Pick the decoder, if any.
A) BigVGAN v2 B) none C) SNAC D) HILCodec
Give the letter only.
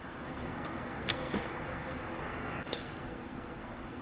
C